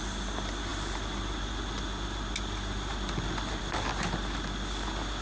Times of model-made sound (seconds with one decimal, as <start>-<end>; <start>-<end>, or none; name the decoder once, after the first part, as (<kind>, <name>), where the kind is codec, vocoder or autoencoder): none